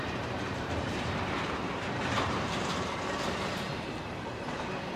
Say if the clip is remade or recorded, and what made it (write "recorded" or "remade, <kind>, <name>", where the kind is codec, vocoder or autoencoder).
remade, vocoder, BigVGAN v2